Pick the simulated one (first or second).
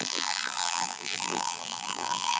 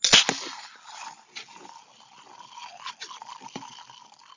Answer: first